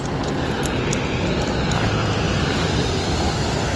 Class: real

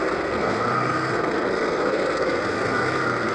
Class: fake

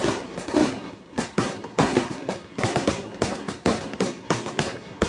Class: fake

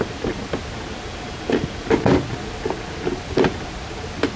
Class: real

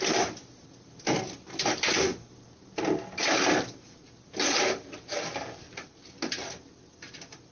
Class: real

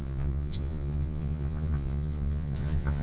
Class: fake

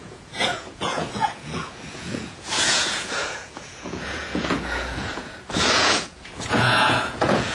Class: fake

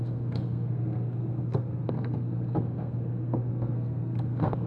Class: fake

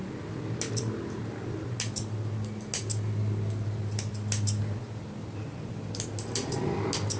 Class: real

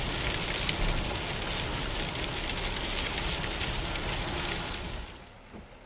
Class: real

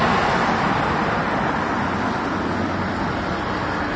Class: real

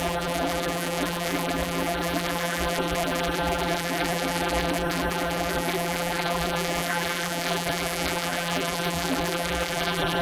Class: fake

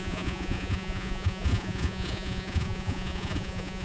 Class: fake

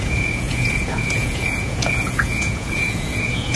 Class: fake